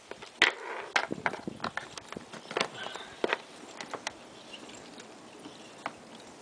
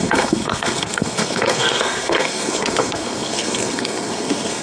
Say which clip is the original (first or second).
first